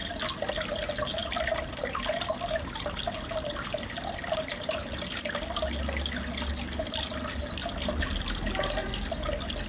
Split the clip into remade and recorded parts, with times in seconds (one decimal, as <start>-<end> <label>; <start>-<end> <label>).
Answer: 0.0-9.7 recorded